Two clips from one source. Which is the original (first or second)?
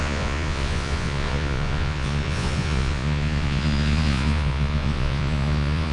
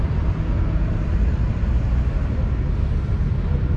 second